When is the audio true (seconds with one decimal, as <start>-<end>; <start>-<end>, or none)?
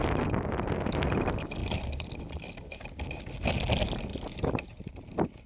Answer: 0.0-4.1